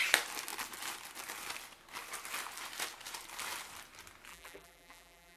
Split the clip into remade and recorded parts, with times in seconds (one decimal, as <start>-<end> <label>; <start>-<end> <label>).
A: 0.0-4.3 recorded; 4.3-5.4 remade